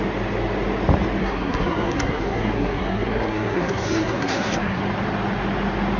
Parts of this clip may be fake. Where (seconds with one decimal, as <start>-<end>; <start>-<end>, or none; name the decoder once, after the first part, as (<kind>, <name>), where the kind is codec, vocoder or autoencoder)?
1.2-4.8 (codec, SNAC)